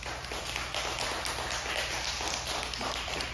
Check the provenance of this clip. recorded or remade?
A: recorded